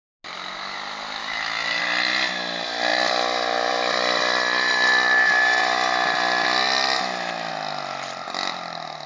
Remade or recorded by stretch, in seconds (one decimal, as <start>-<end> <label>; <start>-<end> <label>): 0.0-1.2 recorded; 1.2-1.8 remade; 1.8-9.1 recorded